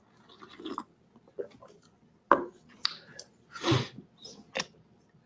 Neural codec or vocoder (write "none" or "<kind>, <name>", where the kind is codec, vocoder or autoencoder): none